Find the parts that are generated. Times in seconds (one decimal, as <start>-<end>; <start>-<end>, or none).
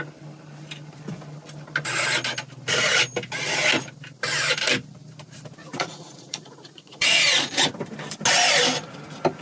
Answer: 5.6-7.5